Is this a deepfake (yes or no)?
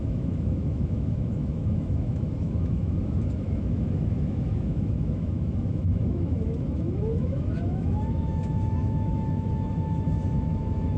yes